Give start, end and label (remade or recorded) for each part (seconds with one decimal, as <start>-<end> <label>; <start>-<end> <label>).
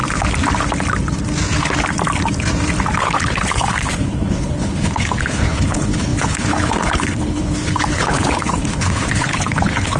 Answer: 0.0-3.0 recorded; 3.0-10.0 remade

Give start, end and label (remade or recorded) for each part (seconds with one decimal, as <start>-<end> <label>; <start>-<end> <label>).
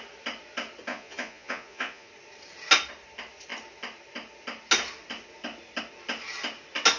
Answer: 0.0-0.9 recorded; 0.9-2.1 remade; 2.1-7.0 recorded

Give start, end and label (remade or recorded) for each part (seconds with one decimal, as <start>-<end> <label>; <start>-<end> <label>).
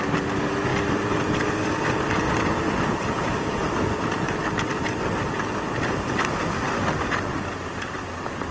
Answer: 0.0-8.5 recorded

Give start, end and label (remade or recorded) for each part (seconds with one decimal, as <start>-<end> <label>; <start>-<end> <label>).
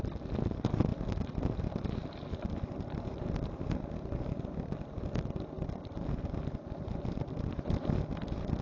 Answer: 0.0-8.6 recorded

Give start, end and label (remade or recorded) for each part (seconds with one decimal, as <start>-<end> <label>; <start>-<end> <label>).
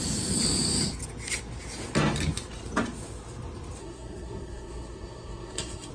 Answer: 0.0-3.8 recorded; 3.8-5.9 remade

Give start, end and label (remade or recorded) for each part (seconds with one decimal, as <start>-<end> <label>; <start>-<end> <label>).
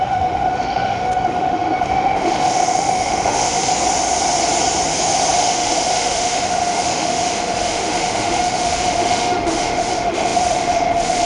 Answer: 0.0-3.7 remade; 3.7-5.4 recorded; 5.4-11.2 remade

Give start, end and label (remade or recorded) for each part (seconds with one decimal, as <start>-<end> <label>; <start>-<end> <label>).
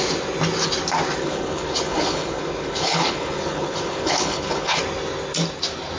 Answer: 0.0-1.2 recorded; 1.2-4.8 remade; 4.8-6.0 recorded